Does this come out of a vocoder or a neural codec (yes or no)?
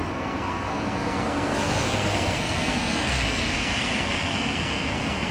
yes